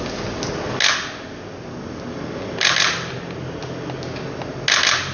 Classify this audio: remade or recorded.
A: recorded